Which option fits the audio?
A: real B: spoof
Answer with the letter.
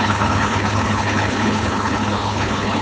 B